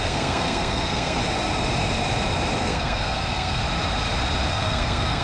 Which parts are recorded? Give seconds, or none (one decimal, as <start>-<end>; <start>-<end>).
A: 1.2-2.6; 3.6-4.5